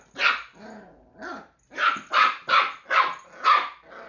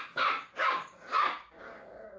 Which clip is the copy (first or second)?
second